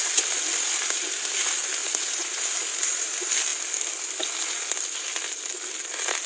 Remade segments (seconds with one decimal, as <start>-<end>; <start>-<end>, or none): 1.8-2.7